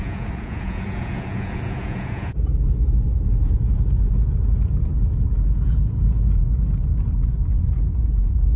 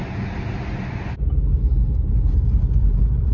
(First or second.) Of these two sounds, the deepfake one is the first